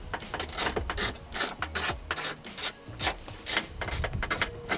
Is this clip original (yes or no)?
yes